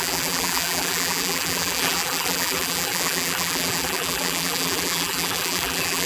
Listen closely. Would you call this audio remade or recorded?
remade